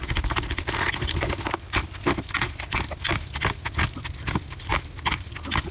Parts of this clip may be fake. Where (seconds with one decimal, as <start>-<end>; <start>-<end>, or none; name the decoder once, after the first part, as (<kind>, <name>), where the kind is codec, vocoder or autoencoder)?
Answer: none